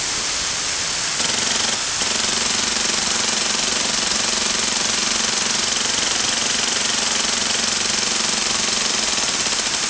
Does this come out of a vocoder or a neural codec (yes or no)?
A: no